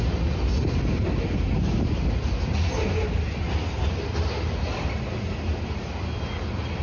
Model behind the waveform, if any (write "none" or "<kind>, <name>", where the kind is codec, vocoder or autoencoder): none